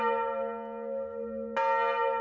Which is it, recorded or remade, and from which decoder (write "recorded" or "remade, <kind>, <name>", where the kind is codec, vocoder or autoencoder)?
recorded